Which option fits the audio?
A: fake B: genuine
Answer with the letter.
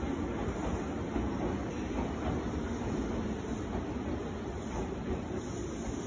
B